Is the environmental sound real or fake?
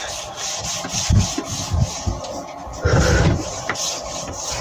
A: real